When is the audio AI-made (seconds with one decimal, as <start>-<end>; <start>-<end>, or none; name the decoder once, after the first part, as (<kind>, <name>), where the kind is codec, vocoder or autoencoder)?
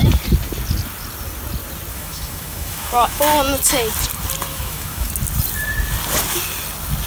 1.9-3.2 (autoencoder, DAC-VAE); 4.5-5.1